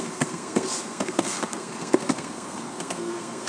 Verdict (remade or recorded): remade